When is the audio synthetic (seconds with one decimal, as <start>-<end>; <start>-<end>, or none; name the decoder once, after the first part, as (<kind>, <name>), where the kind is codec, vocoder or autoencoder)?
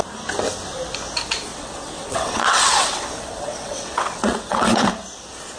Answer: 1.5-4.9 (vocoder, WaveNeXt)